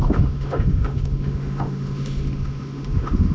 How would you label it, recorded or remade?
remade